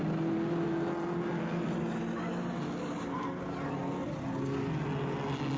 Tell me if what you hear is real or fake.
real